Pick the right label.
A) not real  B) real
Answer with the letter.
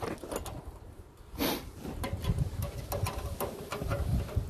B